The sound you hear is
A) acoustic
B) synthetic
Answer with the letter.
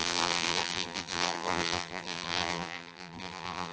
B